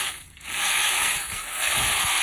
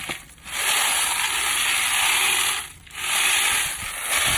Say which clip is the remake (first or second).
first